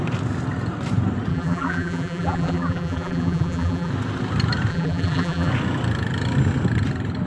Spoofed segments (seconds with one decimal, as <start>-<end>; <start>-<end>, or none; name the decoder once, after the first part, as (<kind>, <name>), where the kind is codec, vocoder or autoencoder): 1.3-3.9 (vocoder, BigVGAN v2); 4.7-5.5